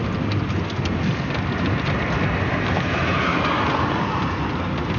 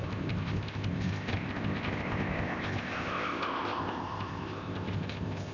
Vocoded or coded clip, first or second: second